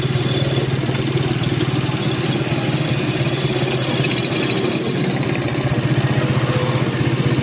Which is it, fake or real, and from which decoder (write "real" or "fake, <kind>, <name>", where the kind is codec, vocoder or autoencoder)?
real